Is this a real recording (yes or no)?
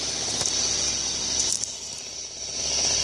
yes